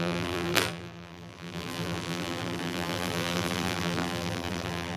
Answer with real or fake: fake